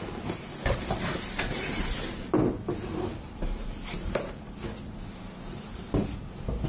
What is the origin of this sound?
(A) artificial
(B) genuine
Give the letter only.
B